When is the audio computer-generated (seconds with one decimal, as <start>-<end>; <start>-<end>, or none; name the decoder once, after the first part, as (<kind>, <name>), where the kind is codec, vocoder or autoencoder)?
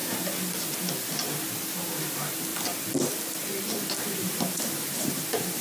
1.8-2.5 (vocoder, BigVGAN v2); 4.0-5.6